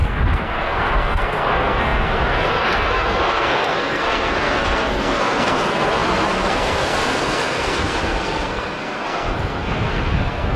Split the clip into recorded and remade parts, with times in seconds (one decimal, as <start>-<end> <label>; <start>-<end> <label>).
0.0-10.6 remade